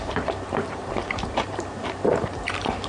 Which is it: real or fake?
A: fake